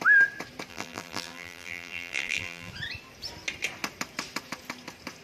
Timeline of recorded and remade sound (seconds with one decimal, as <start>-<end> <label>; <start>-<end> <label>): 0.0-0.7 recorded; 0.7-2.7 remade; 2.7-5.2 recorded

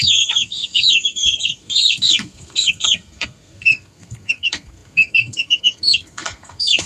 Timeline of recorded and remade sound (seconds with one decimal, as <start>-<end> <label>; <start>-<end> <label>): 0.0-6.9 remade

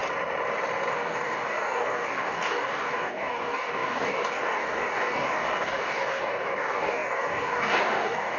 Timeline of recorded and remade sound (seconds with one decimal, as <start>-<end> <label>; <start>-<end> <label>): 0.0-0.9 recorded; 0.9-8.4 remade

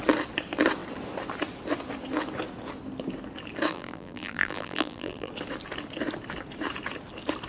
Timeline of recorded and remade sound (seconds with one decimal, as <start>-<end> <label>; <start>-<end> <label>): 0.0-3.7 recorded; 3.7-5.3 remade; 5.3-7.5 recorded

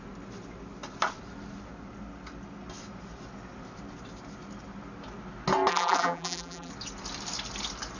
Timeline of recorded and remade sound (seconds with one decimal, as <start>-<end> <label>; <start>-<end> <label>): 0.0-5.7 recorded; 5.7-6.7 remade; 6.7-8.0 recorded

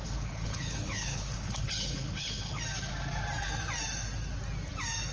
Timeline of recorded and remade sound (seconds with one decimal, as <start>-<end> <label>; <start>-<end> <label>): 0.0-2.6 remade; 2.6-5.1 recorded